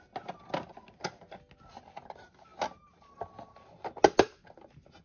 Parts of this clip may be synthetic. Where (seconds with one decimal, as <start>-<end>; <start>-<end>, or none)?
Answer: none